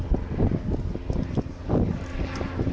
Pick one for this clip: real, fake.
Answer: real